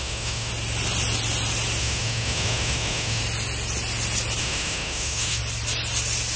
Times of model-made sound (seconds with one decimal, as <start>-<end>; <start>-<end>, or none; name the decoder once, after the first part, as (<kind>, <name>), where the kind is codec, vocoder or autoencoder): 0.0-0.5 (autoencoder, DAC-VAE); 1.8-3.2; 4.4-5.4